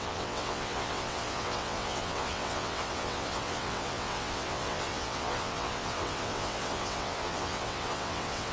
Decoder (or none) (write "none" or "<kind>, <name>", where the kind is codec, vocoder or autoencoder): vocoder, WaveNeXt